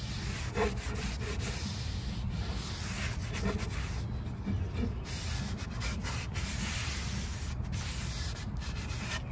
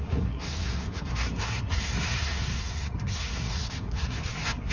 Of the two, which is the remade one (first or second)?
second